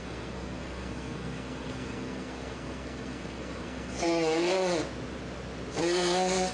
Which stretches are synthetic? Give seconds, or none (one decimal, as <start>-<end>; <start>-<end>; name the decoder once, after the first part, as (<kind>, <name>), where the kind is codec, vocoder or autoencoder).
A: 0.0-4.6 (codec, SNAC); 5.7-6.5